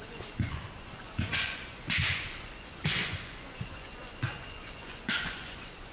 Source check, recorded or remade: remade